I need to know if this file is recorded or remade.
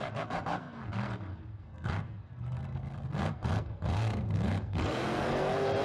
remade